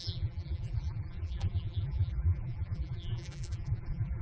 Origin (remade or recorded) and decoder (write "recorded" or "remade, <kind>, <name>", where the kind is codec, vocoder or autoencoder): remade, vocoder, BigVGAN v2